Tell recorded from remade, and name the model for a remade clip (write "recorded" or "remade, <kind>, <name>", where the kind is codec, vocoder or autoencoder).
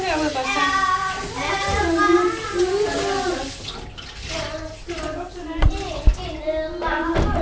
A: recorded